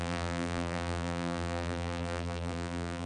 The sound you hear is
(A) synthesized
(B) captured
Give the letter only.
A